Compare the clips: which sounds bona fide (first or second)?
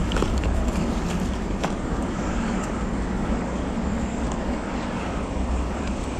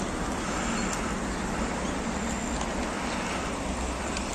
second